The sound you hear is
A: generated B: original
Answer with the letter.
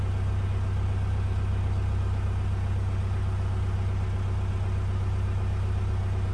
B